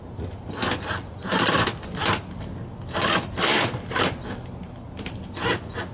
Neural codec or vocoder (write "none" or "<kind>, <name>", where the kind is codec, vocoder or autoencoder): none